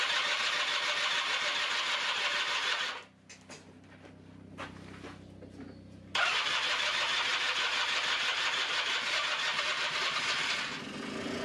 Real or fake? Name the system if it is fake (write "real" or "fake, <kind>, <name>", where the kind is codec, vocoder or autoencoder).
real